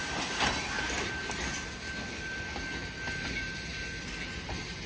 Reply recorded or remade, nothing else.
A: recorded